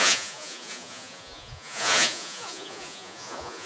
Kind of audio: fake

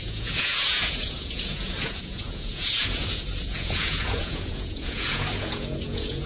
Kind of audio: fake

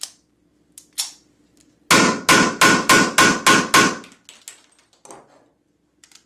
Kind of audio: real